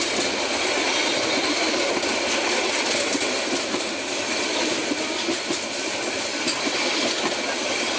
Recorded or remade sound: recorded